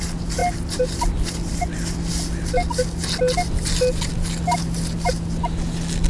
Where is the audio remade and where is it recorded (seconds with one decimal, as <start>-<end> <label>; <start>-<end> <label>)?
0.0-6.1 recorded